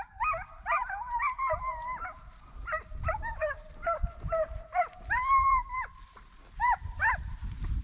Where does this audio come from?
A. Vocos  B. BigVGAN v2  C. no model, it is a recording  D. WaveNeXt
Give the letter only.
B